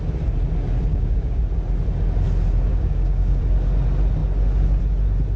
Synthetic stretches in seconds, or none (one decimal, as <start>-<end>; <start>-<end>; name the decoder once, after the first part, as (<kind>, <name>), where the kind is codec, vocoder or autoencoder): 0.9-1.4 (codec, DAC); 2.7-3.4